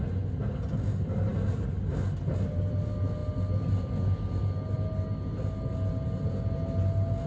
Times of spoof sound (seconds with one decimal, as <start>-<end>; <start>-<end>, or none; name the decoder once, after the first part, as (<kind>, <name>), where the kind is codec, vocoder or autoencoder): none